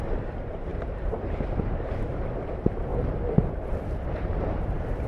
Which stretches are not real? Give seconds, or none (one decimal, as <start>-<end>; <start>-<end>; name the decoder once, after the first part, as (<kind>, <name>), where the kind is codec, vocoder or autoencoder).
0.0-2.9 (vocoder, BigVGAN v2); 3.5-5.1